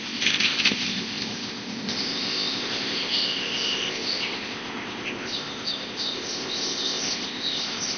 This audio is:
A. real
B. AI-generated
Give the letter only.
B